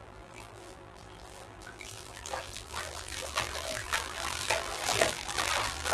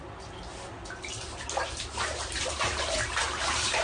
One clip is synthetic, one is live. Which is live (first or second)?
second